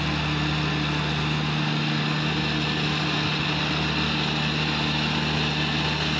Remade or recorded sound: recorded